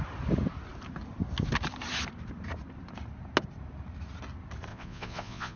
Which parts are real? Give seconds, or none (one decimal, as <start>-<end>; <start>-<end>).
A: 0.0-4.7